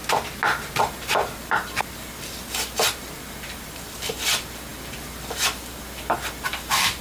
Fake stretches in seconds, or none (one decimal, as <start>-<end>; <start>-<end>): 0.8-7.0